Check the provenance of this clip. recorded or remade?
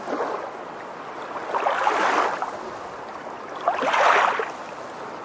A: recorded